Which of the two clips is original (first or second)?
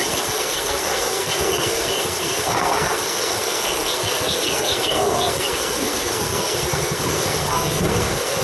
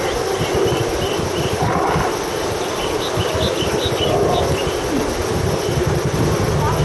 second